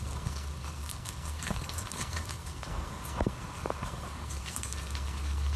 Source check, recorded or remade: remade